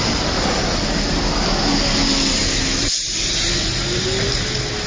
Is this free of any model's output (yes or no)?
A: yes